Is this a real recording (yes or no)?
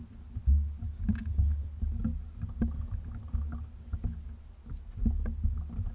yes